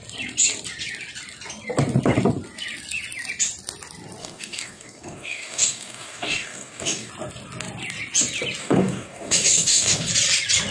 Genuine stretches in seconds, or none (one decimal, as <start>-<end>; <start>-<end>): 0.0-4.2; 7.1-8.6; 10.1-10.7